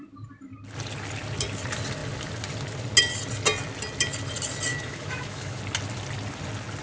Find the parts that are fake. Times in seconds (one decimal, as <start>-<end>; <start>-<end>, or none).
4.7-5.6